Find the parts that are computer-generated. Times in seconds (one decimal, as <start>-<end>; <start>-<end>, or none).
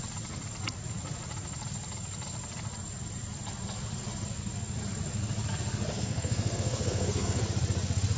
5.9-7.4